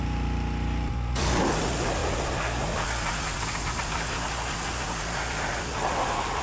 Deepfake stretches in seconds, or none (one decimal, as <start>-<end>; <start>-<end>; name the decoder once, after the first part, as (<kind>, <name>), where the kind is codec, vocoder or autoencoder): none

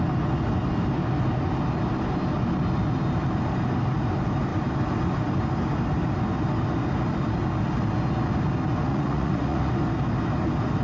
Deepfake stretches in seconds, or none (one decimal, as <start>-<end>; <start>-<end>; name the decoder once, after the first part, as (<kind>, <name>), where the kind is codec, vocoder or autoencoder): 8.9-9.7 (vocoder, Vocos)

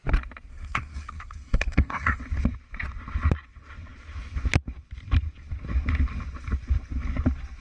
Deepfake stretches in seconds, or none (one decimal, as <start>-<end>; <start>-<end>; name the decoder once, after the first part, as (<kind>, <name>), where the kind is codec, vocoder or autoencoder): 0.5-2.2 (codec, SNAC)